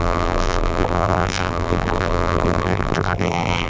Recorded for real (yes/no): no